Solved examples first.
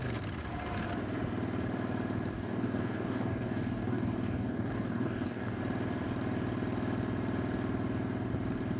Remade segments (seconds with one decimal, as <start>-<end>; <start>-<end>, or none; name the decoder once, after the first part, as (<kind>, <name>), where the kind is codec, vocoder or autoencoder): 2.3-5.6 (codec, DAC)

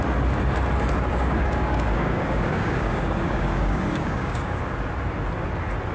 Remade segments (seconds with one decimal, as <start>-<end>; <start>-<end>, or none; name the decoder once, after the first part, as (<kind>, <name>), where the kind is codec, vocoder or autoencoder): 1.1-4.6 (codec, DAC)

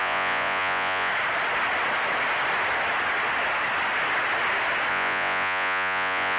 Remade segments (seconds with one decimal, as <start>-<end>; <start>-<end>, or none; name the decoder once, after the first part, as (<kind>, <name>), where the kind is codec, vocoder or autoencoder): 0.0-1.1 (vocoder, Vocos); 4.9-6.4